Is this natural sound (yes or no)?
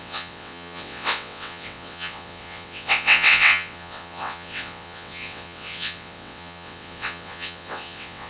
no